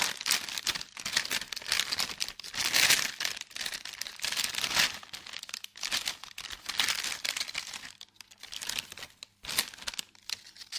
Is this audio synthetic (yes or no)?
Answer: no